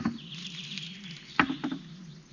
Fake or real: real